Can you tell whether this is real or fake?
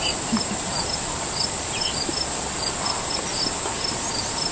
real